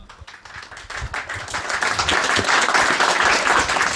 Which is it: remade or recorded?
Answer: recorded